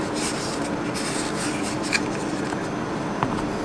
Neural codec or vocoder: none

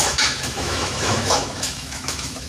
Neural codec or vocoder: autoencoder, DAC-VAE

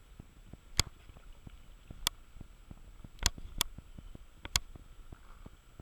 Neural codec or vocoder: none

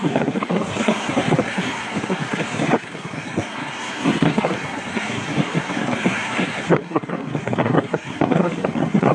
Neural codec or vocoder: codec, SNAC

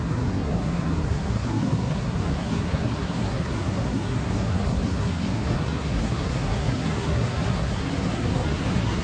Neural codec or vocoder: codec, SNAC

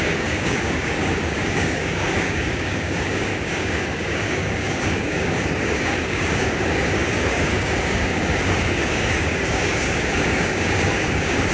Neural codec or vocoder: codec, DAC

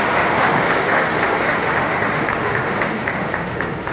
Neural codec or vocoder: autoencoder, DAC-VAE